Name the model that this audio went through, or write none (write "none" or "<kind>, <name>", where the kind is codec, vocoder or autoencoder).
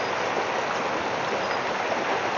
none